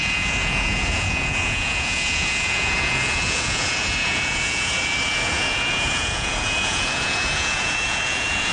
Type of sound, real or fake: fake